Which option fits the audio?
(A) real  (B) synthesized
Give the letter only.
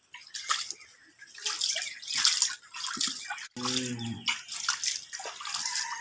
A